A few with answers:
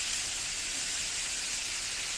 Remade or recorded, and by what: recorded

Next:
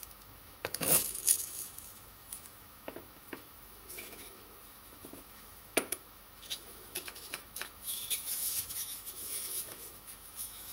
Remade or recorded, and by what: remade, autoencoder, DAC-VAE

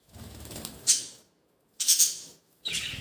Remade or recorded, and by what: remade, autoencoder, DAC-VAE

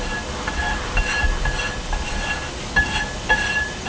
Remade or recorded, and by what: recorded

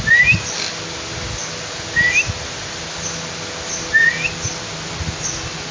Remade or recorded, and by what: recorded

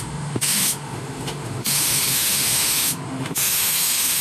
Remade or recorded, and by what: remade, autoencoder, DAC-VAE